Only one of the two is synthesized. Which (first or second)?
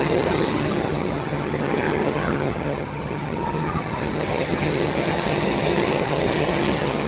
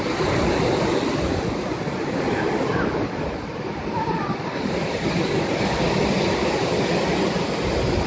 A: first